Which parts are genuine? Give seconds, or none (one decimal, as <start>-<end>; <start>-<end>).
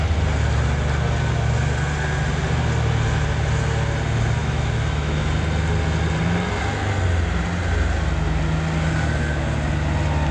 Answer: 0.0-4.4; 5.3-10.3